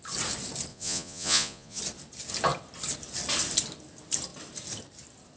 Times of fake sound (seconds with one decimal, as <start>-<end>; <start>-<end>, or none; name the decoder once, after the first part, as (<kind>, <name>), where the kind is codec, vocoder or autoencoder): 0.7-1.8 (vocoder, Vocos)